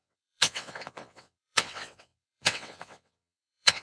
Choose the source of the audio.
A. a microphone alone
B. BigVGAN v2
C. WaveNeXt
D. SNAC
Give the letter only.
C